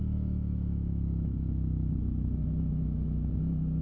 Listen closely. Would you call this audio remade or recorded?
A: remade